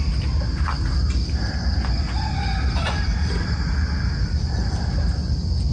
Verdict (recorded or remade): recorded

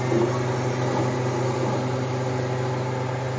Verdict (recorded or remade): recorded